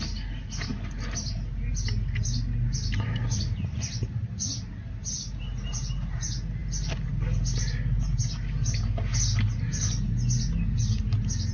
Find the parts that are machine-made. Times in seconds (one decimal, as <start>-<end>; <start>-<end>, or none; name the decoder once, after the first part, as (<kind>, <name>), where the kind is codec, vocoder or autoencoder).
none

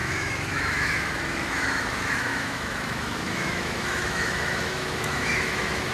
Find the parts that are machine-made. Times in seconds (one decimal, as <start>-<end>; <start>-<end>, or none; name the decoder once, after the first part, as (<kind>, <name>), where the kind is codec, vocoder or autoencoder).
0.0-5.9 (autoencoder, DAC-VAE)

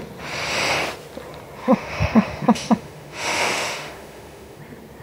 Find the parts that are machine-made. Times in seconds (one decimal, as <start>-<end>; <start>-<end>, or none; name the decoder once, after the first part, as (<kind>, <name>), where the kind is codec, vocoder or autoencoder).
1.6-4.6 (autoencoder, DAC-VAE)

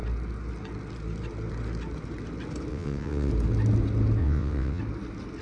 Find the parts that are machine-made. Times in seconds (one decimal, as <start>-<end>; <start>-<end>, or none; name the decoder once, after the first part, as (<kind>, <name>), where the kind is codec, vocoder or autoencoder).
2.7-3.3 (vocoder, WaveNeXt); 4.2-4.8

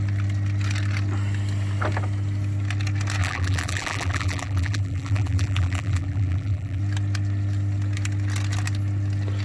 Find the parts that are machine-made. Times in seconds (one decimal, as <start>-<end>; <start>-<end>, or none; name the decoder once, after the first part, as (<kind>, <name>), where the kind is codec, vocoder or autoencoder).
3.2-6.8 (vocoder, BigVGAN v2)